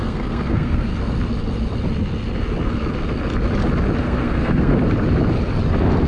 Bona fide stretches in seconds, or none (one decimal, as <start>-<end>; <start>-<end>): 0.9-4.0; 4.7-6.1